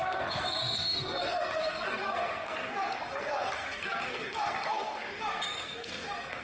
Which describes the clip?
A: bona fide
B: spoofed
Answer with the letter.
B